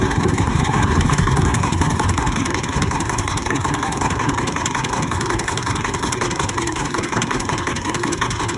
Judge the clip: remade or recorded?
remade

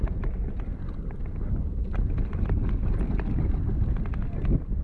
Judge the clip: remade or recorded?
recorded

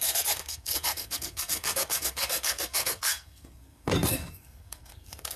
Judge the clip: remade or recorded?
remade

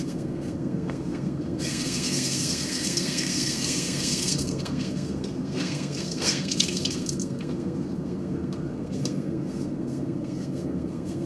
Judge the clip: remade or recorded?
remade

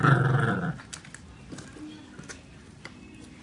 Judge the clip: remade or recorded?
recorded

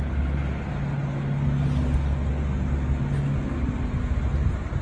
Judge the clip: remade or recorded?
recorded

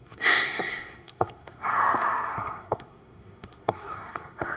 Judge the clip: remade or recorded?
remade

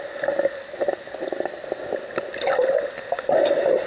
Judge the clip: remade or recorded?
recorded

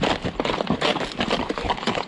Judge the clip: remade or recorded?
recorded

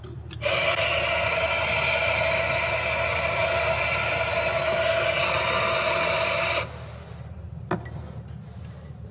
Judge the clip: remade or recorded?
recorded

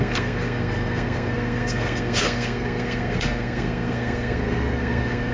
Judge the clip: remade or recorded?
remade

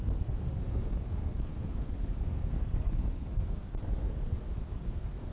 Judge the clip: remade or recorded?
remade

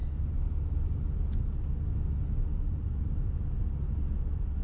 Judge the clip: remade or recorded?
recorded